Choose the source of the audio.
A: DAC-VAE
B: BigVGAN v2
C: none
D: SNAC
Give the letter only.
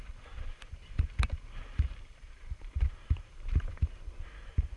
B